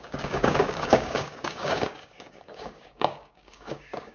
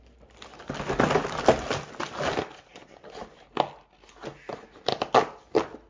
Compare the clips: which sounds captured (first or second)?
second